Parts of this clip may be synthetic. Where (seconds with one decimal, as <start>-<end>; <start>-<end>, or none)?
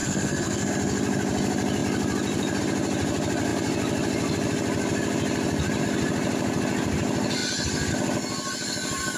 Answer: 0.0-0.7